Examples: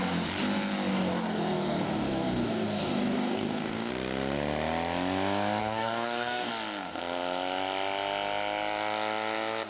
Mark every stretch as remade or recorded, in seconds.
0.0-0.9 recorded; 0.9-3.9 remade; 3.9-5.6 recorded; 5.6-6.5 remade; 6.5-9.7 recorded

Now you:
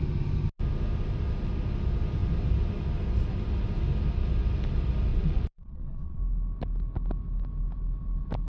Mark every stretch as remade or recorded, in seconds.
0.0-5.1 recorded; 5.1-6.2 remade; 6.2-8.5 recorded

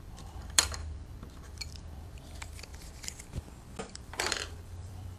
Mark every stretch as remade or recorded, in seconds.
0.0-2.7 remade; 2.7-3.9 recorded; 3.9-5.2 remade

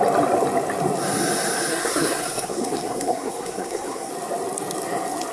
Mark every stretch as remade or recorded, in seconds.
0.0-1.7 recorded; 1.7-4.1 remade; 4.1-5.3 recorded